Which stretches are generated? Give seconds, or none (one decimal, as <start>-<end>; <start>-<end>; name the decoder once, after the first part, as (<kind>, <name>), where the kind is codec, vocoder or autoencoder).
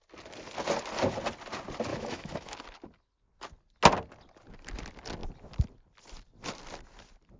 1.9-2.5 (autoencoder, DAC-VAE)